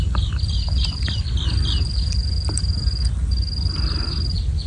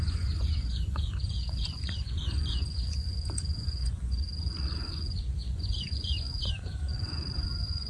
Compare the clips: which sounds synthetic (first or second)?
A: second